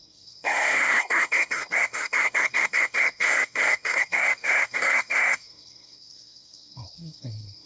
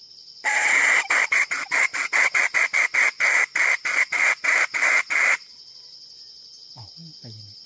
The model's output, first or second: first